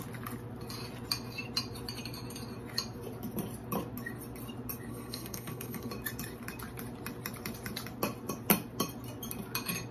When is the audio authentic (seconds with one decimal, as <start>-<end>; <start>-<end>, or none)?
0.0-4.9; 5.9-9.9